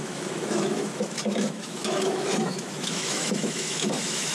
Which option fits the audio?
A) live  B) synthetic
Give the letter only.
B